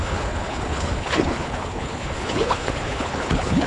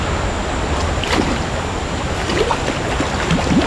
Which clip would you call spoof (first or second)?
first